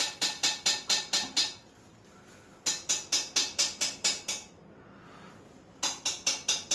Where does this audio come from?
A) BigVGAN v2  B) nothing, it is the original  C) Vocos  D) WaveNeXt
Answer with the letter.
B